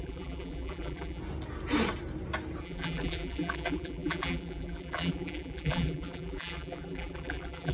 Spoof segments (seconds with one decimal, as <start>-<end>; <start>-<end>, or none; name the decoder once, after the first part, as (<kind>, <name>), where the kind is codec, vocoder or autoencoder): 0.0-1.2 (vocoder, BigVGAN v2); 2.6-7.7